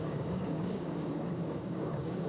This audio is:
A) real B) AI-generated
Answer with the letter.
B